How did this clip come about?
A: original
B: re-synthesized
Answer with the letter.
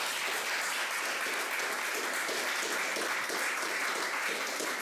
A